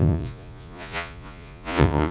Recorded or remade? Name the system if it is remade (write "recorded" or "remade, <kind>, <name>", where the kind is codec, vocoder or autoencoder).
remade, vocoder, Vocos